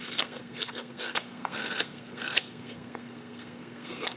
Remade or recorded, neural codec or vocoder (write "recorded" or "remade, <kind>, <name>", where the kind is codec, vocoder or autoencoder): remade, codec, SNAC